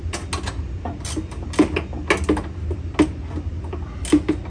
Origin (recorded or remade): recorded